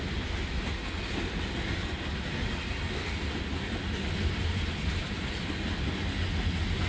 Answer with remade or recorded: recorded